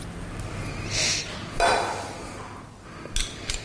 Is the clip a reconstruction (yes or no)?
no